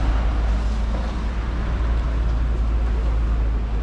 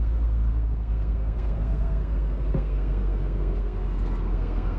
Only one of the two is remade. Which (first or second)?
second